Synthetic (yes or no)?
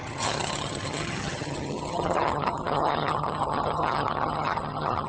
yes